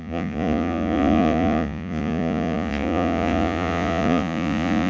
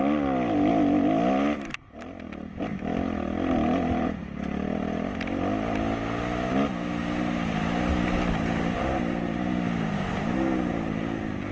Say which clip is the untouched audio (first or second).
second